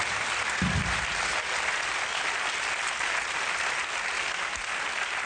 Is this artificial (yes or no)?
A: no